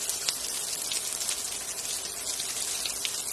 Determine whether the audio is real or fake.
real